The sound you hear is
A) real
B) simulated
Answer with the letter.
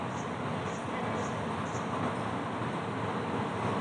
A